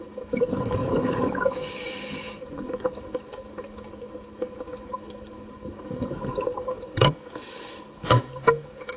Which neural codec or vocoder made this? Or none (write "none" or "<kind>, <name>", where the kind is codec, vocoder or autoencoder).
codec, DAC